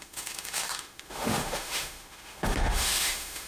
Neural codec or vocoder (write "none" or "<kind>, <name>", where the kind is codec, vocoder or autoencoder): autoencoder, DAC-VAE